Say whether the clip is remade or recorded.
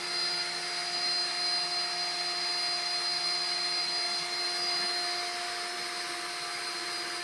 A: recorded